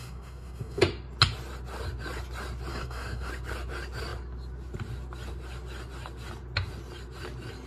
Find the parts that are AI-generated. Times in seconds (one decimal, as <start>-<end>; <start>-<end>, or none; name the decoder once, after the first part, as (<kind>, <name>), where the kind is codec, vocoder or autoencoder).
0.0-0.8 (codec, DAC); 2.7-3.3

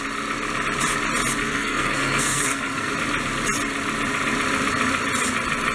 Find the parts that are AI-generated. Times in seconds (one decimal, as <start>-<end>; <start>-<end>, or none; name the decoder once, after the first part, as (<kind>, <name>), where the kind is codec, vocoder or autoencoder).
1.4-2.9 (codec, SNAC)

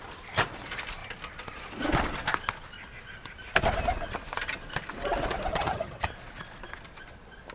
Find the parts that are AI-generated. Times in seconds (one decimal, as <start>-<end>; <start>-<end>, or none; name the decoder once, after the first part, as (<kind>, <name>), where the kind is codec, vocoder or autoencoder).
5.5-6.1 (vocoder, HiFi-GAN)

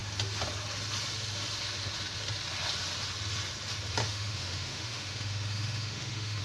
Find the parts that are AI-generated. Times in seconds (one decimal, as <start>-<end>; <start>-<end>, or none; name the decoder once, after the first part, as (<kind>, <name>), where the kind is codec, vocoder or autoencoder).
4.0-6.4 (autoencoder, DAC-VAE)

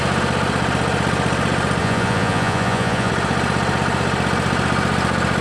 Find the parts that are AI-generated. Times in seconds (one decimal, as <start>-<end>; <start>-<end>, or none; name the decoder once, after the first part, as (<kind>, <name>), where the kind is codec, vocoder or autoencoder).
1.8-3.1 (vocoder, Vocos)

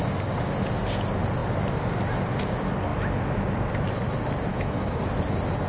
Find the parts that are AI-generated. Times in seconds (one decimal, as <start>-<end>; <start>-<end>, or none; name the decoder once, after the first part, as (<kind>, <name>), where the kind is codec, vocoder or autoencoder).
4.5-5.0 (autoencoder, DAC-VAE)